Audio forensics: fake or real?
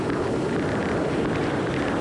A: real